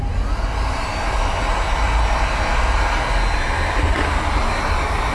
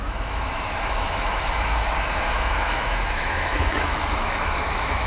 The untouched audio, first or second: first